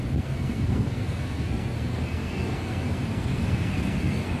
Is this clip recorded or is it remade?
remade